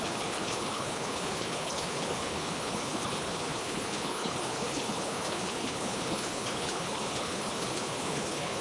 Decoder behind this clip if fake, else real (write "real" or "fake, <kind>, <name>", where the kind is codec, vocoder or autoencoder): fake, codec, HILCodec